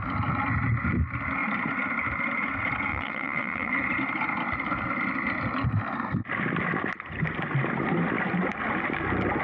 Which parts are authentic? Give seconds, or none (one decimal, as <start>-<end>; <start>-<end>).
0.0-2.9; 3.7-9.4